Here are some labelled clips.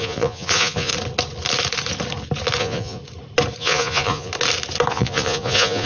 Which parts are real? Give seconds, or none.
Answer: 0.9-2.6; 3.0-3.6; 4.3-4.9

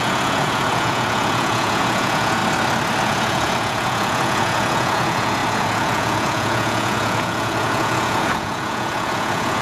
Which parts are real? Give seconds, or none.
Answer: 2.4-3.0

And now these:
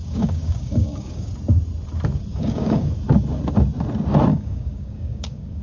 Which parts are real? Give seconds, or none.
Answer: 1.3-2.3; 2.9-4.3